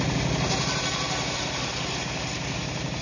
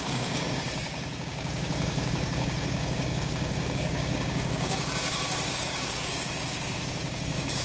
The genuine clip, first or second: first